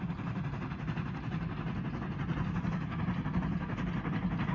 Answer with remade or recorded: recorded